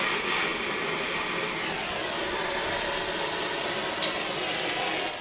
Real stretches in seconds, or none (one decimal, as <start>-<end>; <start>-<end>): 0.0-5.2